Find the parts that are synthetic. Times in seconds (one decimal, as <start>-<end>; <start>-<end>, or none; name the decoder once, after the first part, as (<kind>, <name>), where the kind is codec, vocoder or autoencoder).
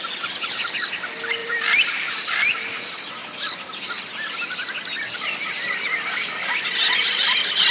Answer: 1.4-2.6 (vocoder, BigVGAN v2)